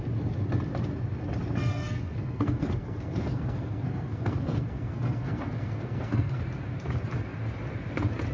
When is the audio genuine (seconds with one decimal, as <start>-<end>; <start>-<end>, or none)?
0.0-1.7; 6.4-8.3